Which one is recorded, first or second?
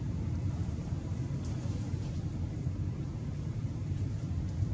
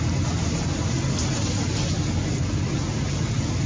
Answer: second